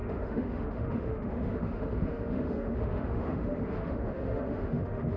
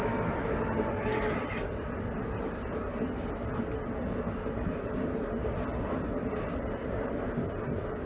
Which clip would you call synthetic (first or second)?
first